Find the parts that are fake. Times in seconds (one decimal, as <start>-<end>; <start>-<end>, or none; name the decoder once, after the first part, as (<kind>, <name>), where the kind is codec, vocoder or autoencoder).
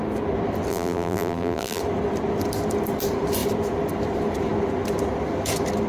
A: 0.7-1.8 (vocoder, BigVGAN v2)